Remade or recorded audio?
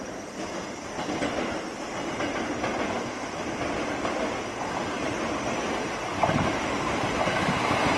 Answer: recorded